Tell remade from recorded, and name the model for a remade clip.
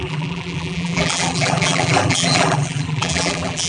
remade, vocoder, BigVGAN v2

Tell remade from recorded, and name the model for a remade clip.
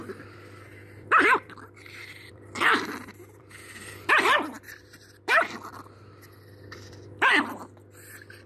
remade, vocoder, BigVGAN v2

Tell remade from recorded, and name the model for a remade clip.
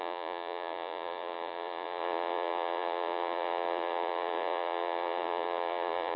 remade, vocoder, Vocos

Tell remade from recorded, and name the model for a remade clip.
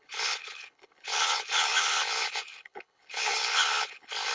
remade, codec, HILCodec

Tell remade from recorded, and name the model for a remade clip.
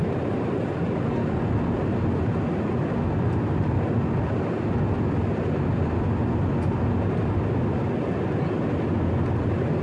recorded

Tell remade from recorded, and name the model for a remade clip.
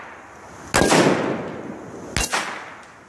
recorded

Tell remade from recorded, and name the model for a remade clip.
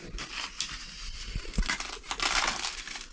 recorded